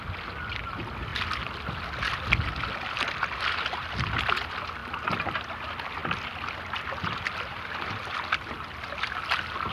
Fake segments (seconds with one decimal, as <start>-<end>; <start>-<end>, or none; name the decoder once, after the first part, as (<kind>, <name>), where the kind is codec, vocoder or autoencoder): none